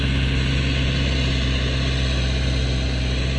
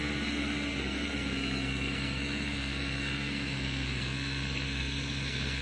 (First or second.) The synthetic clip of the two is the second